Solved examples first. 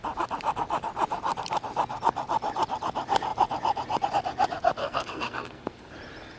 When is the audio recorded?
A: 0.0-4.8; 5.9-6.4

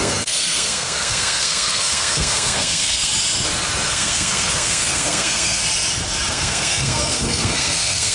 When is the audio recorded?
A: 3.1-3.9; 5.6-6.3